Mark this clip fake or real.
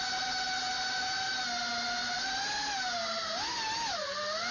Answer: real